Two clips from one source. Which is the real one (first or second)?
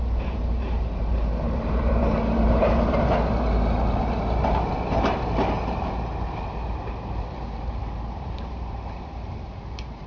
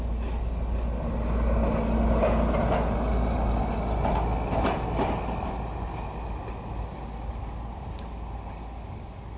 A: second